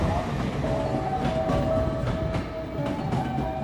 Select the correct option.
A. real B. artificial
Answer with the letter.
A